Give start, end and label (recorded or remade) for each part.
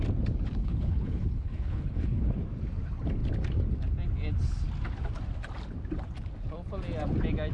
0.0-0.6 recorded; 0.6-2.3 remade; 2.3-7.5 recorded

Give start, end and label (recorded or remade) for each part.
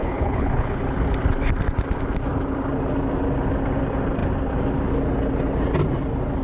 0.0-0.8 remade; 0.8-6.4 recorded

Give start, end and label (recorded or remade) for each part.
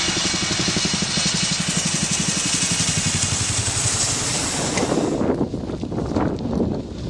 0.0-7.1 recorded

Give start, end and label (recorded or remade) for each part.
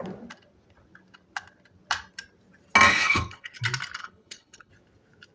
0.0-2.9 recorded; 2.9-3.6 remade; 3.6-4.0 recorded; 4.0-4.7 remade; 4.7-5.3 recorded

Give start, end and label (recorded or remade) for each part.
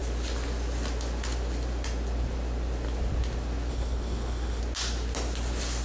0.0-3.7 recorded; 3.7-4.6 remade; 4.6-5.8 recorded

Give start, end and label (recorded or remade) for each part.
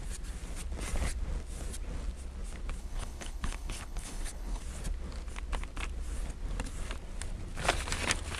0.0-2.8 recorded; 2.8-4.6 remade; 4.6-8.4 recorded